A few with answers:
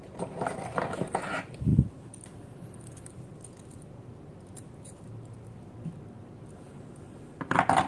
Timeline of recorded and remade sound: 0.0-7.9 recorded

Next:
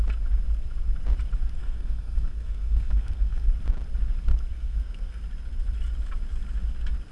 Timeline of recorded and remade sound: 0.0-1.6 recorded; 1.6-3.5 remade; 3.5-4.5 recorded; 4.5-5.2 remade; 5.2-7.1 recorded

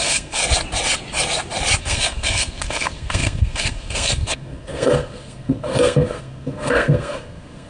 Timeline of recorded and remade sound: 0.0-0.4 remade; 0.4-1.8 recorded; 1.8-7.7 remade

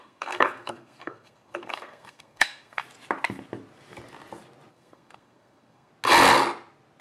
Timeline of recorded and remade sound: 0.0-2.8 remade; 2.8-4.7 recorded; 4.7-5.9 remade; 5.9-7.0 recorded

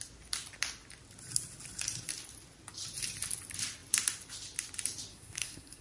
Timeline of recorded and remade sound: 0.0-5.1 recorded; 5.1-5.8 remade

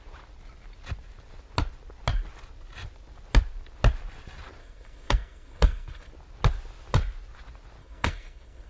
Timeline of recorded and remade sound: 0.0-4.6 recorded; 4.6-6.1 remade; 6.1-7.8 recorded; 7.8-8.7 remade

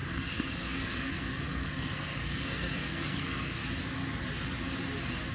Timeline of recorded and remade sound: 0.0-3.6 remade; 3.6-5.3 recorded

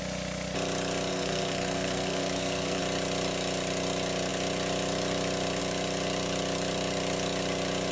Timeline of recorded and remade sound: 0.0-1.1 recorded; 1.1-2.8 remade; 2.8-7.9 recorded